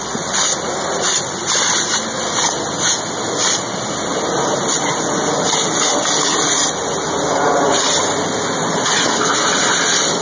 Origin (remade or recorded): recorded